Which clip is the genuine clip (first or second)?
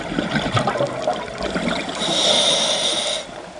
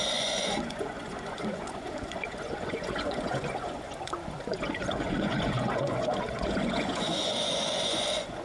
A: first